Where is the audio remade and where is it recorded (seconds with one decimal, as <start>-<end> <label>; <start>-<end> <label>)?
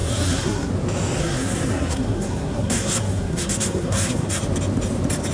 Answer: 0.0-0.7 remade; 0.7-1.2 recorded; 1.2-4.4 remade; 4.4-5.3 recorded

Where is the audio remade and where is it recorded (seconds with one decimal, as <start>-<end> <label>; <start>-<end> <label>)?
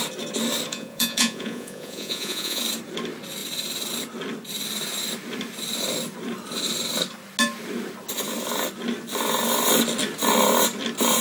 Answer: 0.0-0.7 recorded; 0.7-2.6 remade; 2.6-11.2 recorded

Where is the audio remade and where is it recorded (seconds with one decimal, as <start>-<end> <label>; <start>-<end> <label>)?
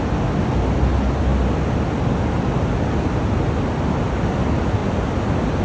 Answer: 0.0-5.6 recorded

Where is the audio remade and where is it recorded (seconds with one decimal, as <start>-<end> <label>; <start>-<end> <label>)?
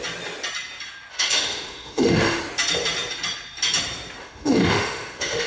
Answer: 0.0-1.1 recorded; 1.1-2.4 remade; 2.4-4.2 recorded; 4.2-5.5 remade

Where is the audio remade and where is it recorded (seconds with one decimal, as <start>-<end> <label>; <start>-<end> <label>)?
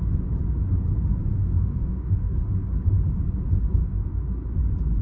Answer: 0.0-1.3 recorded; 1.3-2.4 remade; 2.4-3.8 recorded; 3.8-4.3 remade; 4.3-5.0 recorded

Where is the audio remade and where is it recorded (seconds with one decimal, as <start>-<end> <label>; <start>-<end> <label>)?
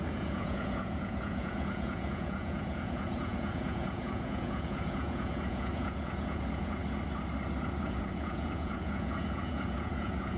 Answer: 0.0-6.8 remade; 6.8-7.8 recorded; 7.8-10.4 remade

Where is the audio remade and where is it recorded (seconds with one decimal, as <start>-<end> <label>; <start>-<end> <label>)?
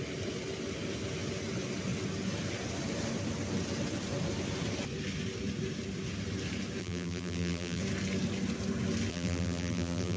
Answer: 0.0-6.8 recorded; 6.8-7.8 remade; 7.8-9.1 recorded; 9.1-10.2 remade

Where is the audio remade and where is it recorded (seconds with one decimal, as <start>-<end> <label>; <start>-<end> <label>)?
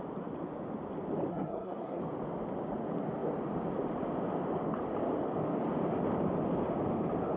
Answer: 0.0-1.3 recorded; 1.3-2.0 remade; 2.0-7.4 recorded